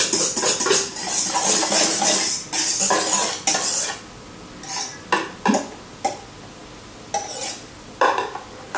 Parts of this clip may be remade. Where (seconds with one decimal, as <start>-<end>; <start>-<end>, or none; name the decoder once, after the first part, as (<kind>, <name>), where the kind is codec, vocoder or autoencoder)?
none